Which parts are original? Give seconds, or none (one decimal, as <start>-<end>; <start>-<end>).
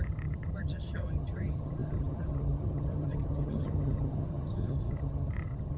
none